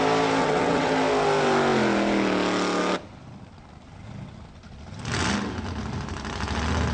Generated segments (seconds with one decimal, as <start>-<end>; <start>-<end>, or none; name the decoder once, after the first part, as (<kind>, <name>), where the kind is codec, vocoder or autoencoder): 0.4-0.9 (vocoder, WaveNeXt)

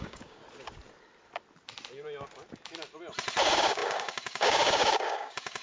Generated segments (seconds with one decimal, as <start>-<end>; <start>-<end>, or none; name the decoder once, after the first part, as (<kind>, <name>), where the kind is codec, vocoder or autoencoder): 0.0-0.4 (codec, DAC); 3.4-5.6